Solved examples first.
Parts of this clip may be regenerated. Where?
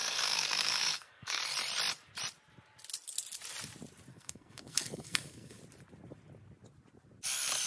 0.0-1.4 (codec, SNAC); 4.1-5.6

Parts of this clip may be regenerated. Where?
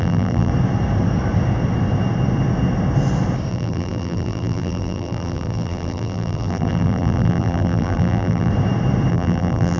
0.0-0.5 (vocoder, BigVGAN v2); 3.5-8.5; 9.1-9.8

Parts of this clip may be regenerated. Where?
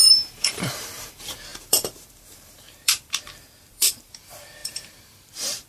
0.0-5.7 (vocoder, BigVGAN v2)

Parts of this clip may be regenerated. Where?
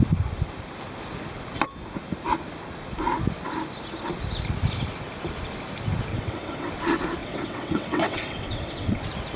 6.1-6.7 (vocoder, WaveNeXt); 7.2-9.0